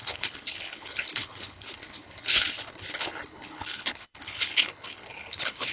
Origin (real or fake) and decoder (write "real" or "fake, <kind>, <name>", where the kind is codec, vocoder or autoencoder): fake, codec, HILCodec